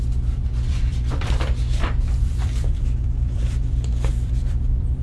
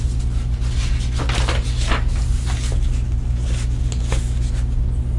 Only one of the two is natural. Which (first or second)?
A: second